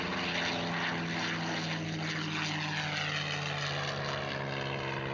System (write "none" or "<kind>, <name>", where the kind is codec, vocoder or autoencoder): none